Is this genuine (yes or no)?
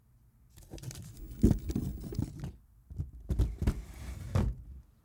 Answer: yes